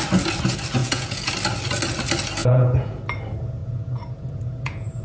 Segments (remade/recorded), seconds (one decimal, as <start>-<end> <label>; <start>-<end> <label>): 0.0-0.8 recorded; 0.8-1.3 remade; 1.3-2.4 recorded; 2.4-3.0 remade; 3.0-3.6 recorded; 3.6-5.0 remade